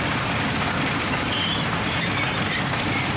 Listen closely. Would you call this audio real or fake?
real